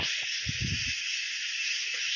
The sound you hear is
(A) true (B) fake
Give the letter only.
A